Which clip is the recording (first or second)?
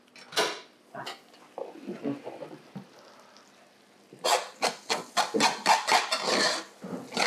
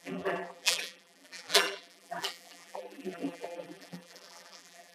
first